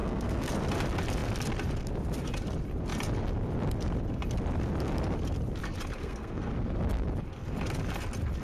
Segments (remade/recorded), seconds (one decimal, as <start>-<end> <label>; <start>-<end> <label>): 0.0-0.5 remade; 0.5-6.0 recorded; 6.0-6.5 remade; 6.5-8.4 recorded